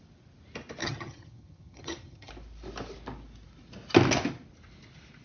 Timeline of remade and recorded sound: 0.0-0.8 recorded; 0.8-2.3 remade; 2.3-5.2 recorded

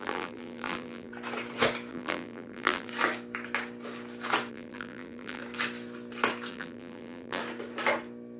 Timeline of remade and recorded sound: 0.0-1.1 remade; 1.1-1.9 recorded; 1.9-2.9 remade; 2.9-4.5 recorded; 4.5-5.4 remade; 5.4-6.5 recorded; 6.5-7.4 remade; 7.4-8.4 recorded

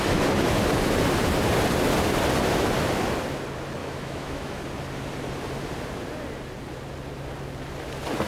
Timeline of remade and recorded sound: 0.0-3.8 recorded; 3.8-4.6 remade; 4.6-8.3 recorded

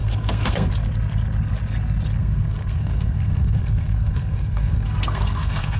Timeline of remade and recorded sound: 0.0-0.7 remade; 0.7-2.2 recorded; 2.2-5.8 remade